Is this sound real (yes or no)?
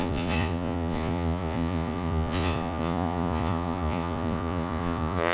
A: no